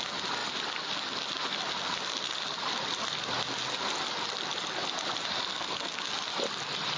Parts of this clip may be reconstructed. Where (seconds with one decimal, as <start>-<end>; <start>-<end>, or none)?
5.5-6.0